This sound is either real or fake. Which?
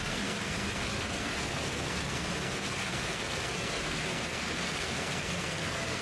fake